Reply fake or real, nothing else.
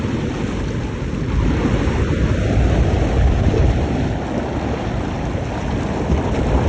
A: real